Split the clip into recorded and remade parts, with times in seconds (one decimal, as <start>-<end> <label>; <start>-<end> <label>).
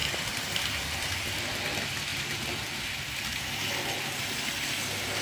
0.0-2.1 recorded; 2.1-3.6 remade; 3.6-5.2 recorded